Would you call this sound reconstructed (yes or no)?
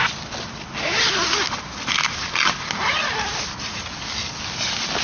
no